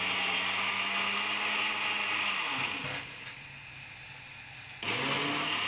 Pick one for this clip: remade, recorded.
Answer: recorded